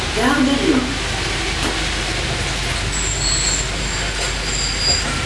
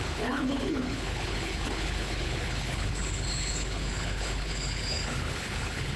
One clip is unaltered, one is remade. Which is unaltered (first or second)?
first